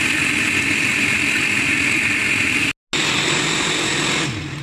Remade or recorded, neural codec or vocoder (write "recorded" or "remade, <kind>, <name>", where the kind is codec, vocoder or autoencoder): recorded